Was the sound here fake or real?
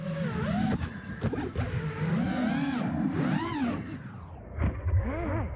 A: real